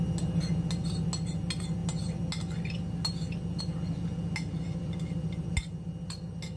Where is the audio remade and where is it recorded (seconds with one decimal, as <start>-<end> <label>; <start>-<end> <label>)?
0.0-6.6 recorded